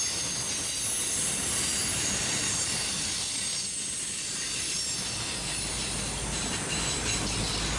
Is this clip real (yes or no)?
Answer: yes